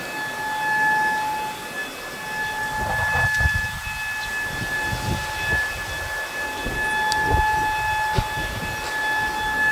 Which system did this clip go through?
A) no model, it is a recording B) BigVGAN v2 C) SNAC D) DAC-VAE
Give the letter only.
A